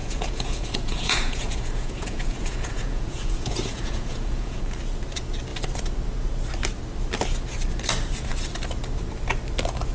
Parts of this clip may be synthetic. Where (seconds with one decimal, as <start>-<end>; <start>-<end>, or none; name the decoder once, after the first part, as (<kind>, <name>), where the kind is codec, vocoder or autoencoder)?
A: 0.0-4.6 (vocoder, Vocos)